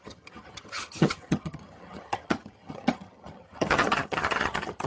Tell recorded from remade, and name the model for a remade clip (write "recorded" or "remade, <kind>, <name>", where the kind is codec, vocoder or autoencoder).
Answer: remade, vocoder, HiFi-GAN